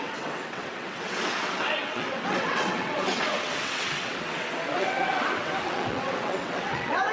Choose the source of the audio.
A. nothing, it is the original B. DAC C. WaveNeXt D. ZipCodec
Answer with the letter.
C